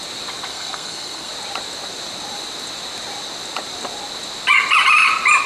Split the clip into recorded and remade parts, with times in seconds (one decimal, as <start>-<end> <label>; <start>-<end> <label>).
0.0-0.5 recorded; 0.5-1.3 remade; 1.3-5.5 recorded